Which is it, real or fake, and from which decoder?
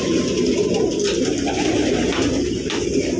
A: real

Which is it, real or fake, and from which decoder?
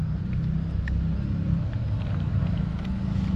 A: real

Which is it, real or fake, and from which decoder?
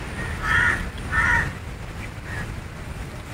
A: real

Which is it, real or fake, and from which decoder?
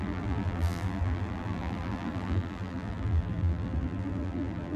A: fake, vocoder, BigVGAN v2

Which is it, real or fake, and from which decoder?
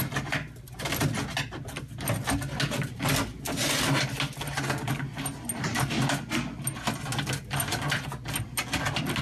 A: real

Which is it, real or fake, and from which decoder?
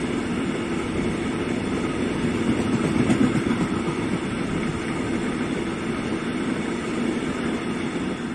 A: real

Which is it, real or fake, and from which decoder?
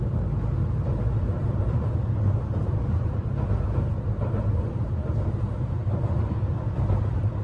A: fake, vocoder, BigVGAN v2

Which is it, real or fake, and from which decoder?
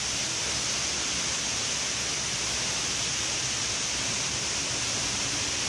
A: real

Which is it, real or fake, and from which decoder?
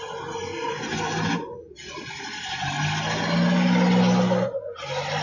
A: real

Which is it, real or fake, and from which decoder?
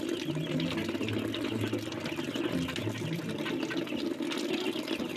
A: real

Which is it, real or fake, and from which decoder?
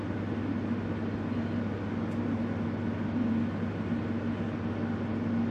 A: real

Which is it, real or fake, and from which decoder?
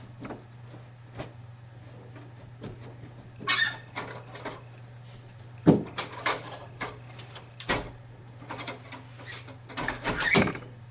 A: real